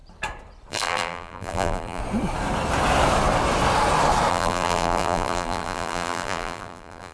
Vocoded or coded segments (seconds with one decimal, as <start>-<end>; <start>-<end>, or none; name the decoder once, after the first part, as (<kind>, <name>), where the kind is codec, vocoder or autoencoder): 0.7-2.0 (vocoder, BigVGAN v2); 4.3-7.1